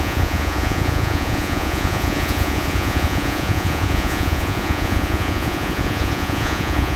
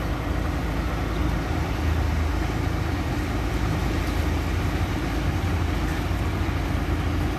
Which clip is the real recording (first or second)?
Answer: second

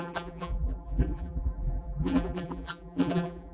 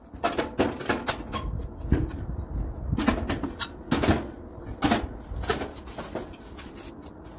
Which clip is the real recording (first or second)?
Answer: second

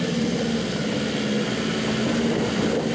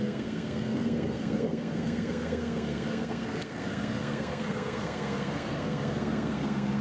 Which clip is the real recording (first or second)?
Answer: first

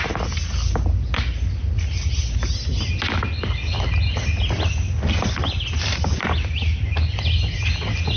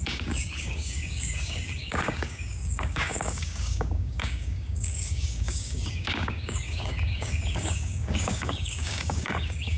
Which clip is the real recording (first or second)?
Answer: first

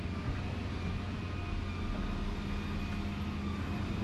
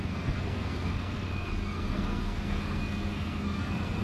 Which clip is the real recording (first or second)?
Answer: first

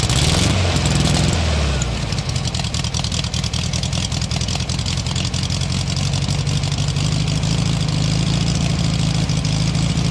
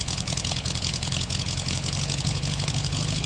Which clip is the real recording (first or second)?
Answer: first